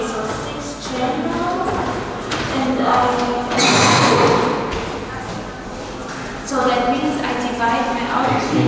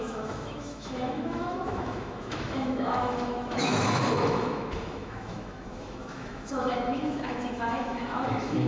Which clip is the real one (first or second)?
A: first